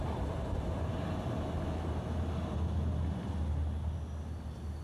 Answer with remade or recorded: recorded